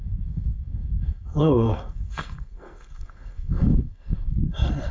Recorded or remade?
remade